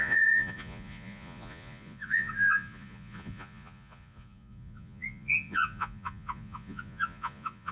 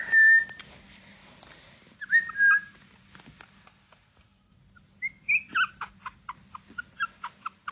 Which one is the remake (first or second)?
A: first